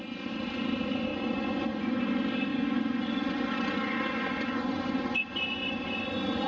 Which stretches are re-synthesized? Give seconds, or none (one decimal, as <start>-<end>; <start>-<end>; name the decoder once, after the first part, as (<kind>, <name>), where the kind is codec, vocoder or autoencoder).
1.1-2.0 (vocoder, Vocos); 2.5-6.5